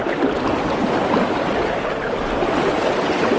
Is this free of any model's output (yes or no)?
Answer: yes